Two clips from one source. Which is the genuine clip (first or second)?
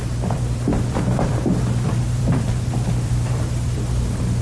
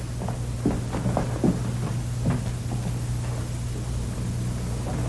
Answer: second